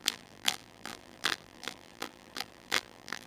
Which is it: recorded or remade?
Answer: remade